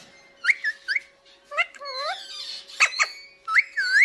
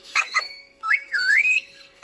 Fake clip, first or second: second